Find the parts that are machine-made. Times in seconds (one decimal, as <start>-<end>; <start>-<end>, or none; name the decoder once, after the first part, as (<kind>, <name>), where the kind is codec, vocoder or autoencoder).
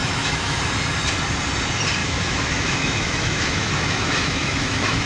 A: 0.0-0.6 (autoencoder, DAC-VAE); 2.0-5.1